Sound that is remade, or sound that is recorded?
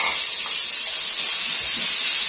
recorded